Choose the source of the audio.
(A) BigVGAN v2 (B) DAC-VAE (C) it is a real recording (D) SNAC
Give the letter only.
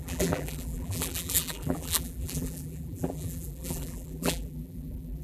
A